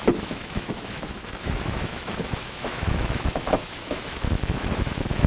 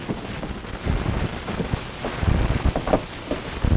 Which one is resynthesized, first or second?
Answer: first